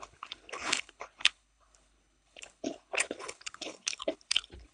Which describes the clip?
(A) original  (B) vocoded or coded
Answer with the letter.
B